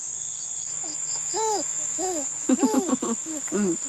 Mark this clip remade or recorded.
remade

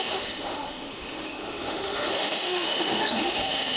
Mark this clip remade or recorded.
remade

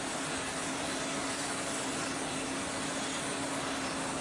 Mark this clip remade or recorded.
recorded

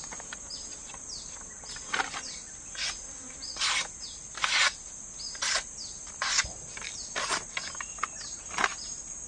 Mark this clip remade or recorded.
recorded